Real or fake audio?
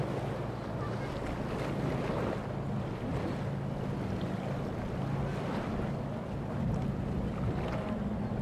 real